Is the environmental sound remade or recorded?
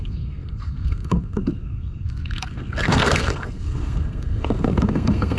remade